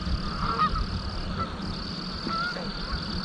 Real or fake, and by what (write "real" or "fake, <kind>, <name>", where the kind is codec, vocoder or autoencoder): real